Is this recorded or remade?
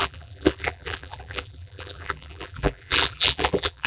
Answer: remade